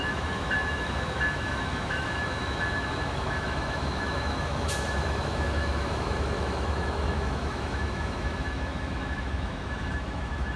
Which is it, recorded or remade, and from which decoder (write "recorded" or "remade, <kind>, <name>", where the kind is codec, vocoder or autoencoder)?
remade, autoencoder, DAC-VAE